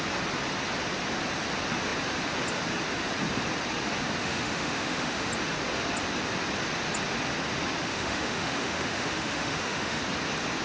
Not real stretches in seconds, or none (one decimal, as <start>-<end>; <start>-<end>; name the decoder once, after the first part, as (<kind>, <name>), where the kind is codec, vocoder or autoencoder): 4.2-5.3 (autoencoder, DAC-VAE); 7.8-10.0